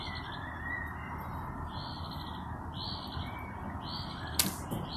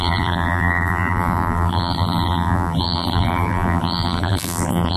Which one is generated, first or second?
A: second